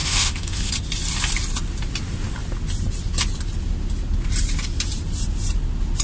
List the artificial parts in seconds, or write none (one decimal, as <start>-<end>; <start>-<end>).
0.0-0.7

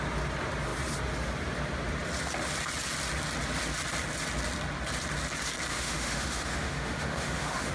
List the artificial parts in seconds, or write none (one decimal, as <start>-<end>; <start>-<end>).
5.7-7.7

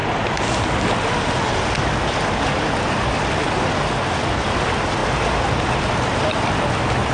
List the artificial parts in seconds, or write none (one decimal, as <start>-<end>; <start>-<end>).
none